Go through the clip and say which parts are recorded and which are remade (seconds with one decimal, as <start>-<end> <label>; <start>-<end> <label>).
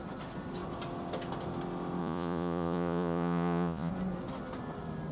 0.0-2.0 recorded; 2.0-3.9 remade; 3.9-5.1 recorded